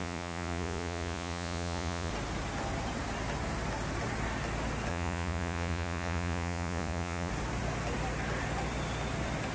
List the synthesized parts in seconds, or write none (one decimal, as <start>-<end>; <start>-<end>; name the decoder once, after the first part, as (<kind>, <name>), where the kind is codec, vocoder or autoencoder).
0.0-2.1 (vocoder, Vocos); 4.9-7.3